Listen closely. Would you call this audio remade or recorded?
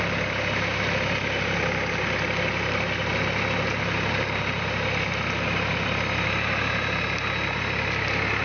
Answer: recorded